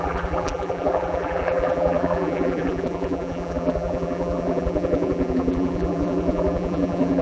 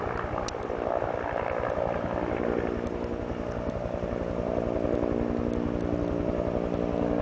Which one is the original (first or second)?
second